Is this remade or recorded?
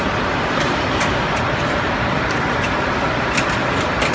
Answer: remade